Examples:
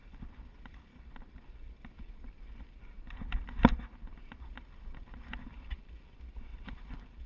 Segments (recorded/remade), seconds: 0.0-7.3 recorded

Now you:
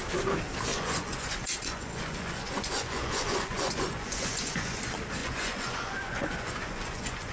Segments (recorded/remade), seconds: 0.0-0.7 recorded; 0.7-4.8 remade; 4.8-5.2 recorded; 5.2-7.3 remade